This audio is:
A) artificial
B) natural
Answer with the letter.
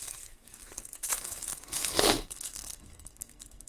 A